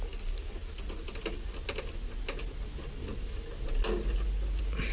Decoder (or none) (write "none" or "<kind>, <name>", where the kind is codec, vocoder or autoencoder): none